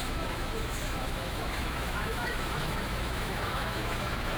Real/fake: fake